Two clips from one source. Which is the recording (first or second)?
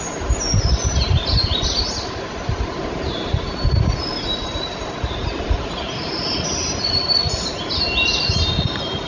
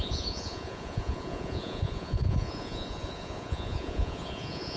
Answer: first